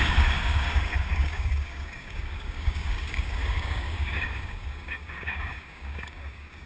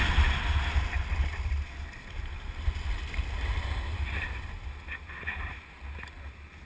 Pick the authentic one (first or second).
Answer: second